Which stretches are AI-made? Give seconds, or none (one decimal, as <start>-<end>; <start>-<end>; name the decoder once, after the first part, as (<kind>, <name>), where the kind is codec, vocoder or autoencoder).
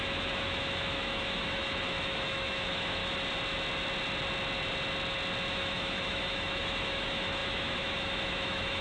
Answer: 0.0-3.0 (autoencoder, DAC-VAE); 5.5-8.8